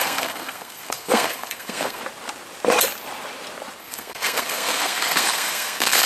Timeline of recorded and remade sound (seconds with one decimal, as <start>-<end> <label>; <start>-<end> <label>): 0.0-2.0 remade; 2.0-3.8 recorded; 3.8-6.1 remade